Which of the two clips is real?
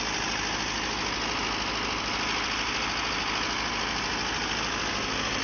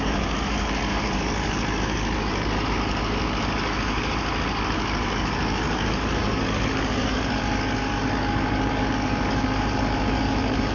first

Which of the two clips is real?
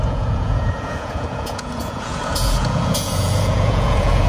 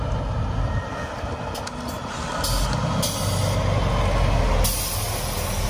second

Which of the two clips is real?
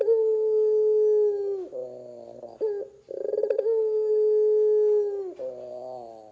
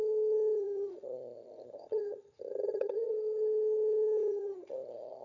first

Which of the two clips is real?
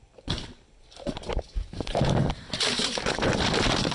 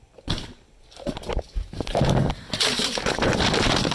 second